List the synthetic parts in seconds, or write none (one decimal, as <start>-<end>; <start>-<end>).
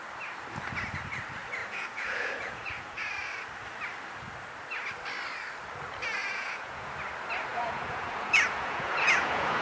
1.6-3.1; 6.2-6.9; 7.5-9.6